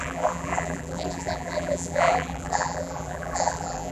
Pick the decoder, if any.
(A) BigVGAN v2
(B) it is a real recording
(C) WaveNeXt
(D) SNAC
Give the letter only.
A